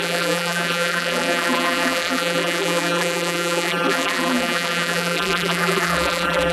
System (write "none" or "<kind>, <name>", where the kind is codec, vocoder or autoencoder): vocoder, BigVGAN v2